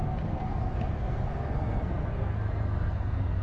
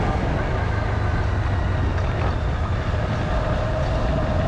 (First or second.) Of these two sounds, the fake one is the first